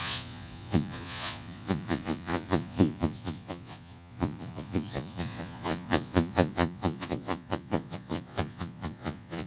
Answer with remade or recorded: remade